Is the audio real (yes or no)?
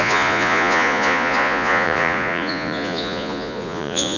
no